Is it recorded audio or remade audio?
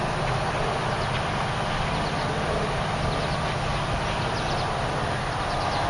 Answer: recorded